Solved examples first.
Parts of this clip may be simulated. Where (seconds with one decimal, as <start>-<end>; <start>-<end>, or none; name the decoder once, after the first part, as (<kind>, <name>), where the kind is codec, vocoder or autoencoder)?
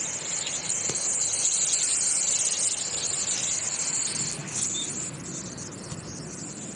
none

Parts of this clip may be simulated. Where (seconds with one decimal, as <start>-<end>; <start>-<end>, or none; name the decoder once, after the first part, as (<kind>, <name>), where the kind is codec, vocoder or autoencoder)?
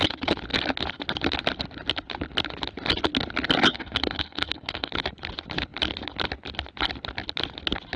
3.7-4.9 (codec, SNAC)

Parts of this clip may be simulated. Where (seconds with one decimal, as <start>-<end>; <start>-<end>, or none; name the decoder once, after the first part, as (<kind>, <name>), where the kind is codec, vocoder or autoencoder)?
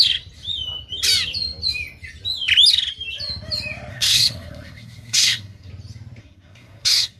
3.9-5.7 (codec, SNAC); 6.2-7.2